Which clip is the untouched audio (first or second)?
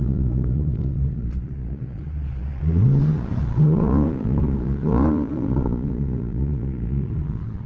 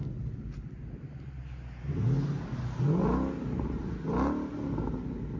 second